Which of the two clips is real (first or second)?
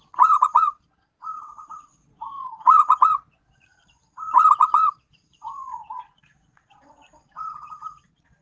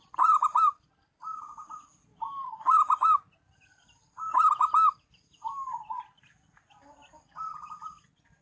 second